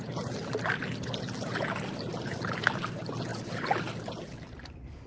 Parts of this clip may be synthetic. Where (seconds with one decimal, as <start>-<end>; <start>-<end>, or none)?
none